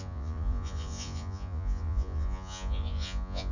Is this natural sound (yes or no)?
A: no